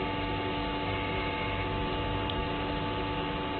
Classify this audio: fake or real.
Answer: real